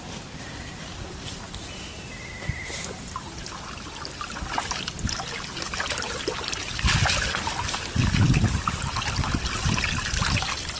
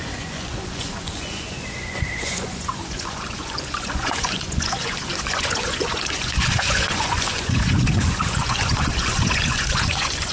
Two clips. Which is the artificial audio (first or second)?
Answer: second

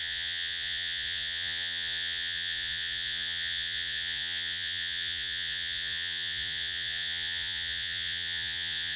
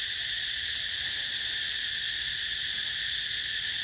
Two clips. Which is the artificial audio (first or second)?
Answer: first